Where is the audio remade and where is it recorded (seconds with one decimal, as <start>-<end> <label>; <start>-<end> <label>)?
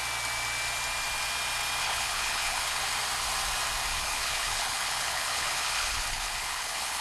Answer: 0.0-1.8 recorded; 1.8-2.8 remade; 2.8-3.9 recorded; 3.9-7.0 remade